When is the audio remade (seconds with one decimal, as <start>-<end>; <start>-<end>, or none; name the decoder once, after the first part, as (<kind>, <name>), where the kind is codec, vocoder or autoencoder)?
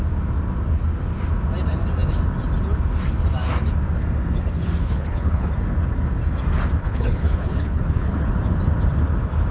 4.8-5.5 (codec, HILCodec); 6.8-8.3